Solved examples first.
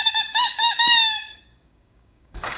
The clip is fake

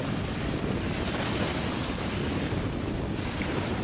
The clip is real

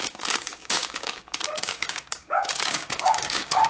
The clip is fake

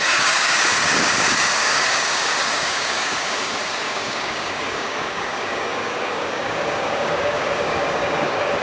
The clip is fake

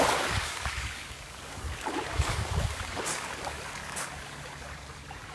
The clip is fake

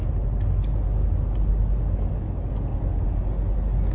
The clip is real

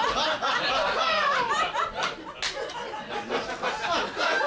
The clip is real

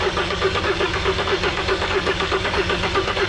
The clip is fake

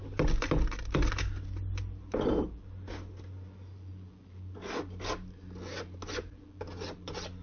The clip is real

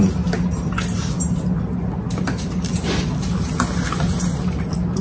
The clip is real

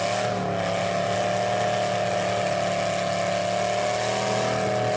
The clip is real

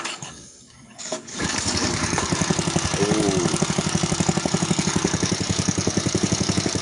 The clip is fake